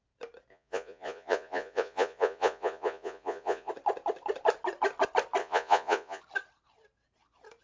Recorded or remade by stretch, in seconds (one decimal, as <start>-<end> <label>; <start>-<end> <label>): 0.0-0.5 recorded; 0.5-3.7 remade; 3.7-5.4 recorded; 5.4-6.2 remade; 6.2-7.6 recorded